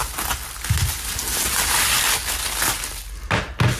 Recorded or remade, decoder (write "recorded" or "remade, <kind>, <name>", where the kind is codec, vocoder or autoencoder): recorded